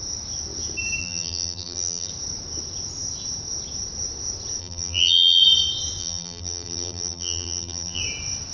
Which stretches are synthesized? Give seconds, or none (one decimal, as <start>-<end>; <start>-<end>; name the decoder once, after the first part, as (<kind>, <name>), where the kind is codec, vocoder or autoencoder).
1.0-2.1 (vocoder, BigVGAN v2); 4.6-5.4; 6.0-8.0